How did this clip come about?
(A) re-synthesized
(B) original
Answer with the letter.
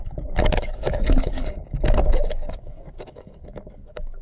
A